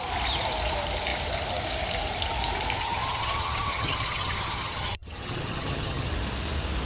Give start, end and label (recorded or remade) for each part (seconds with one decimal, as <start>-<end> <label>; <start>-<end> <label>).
0.0-2.8 recorded; 2.8-6.1 remade; 6.1-6.9 recorded